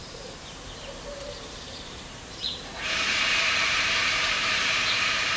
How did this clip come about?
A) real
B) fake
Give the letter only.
B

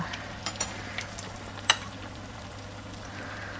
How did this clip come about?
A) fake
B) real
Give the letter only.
A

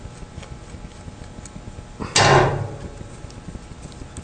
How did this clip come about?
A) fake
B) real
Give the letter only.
B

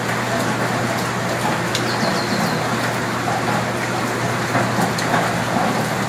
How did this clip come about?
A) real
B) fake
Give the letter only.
A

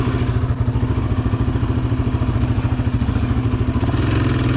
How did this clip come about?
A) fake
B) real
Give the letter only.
B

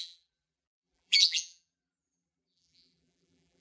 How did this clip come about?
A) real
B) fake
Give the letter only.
B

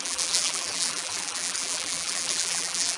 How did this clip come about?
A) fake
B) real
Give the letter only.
A